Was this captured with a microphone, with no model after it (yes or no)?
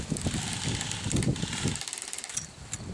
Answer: yes